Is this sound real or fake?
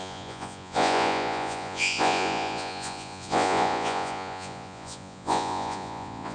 fake